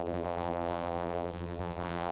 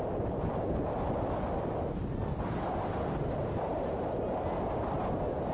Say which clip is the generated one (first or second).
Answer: first